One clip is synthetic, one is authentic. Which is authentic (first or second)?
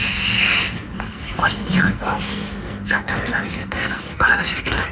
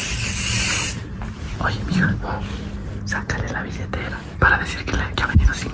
second